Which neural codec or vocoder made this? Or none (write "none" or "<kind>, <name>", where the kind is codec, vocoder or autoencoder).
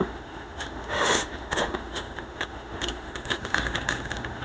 autoencoder, DAC-VAE